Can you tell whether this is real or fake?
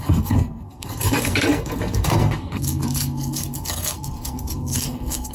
fake